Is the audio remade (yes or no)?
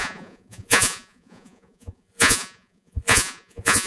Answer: yes